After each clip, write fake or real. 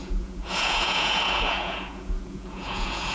fake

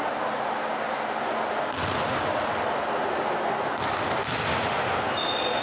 real